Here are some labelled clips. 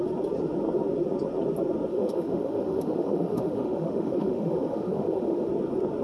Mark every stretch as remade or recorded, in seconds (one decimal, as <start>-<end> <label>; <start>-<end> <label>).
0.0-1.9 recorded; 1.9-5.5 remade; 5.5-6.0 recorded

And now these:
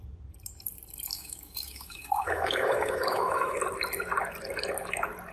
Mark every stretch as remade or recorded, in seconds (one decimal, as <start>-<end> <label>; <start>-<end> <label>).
0.0-1.1 recorded; 1.1-3.6 remade; 3.6-5.3 recorded

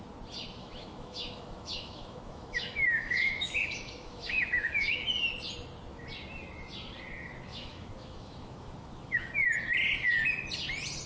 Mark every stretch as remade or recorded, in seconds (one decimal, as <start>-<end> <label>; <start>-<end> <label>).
0.0-0.6 recorded; 0.6-5.1 remade; 5.1-7.5 recorded; 7.5-9.3 remade; 9.3-11.1 recorded

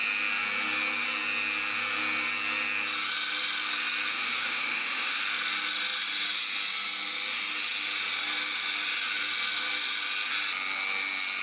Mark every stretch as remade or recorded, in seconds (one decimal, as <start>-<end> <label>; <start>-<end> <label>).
0.0-4.1 recorded; 4.1-5.2 remade; 5.2-11.4 recorded

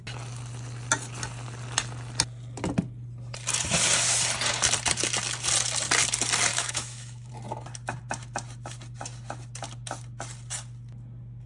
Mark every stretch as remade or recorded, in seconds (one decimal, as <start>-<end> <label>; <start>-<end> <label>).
0.0-6.5 recorded; 6.5-7.3 remade; 7.3-11.5 recorded

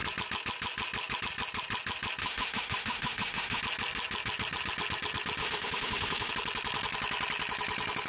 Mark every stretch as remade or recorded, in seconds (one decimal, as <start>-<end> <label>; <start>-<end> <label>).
0.0-2.2 recorded; 2.2-3.6 remade; 3.6-5.4 recorded; 5.4-6.3 remade; 6.3-8.1 recorded

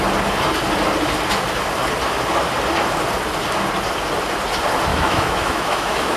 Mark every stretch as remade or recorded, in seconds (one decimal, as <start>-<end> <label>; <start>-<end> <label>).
0.0-4.9 recorded; 4.9-6.2 remade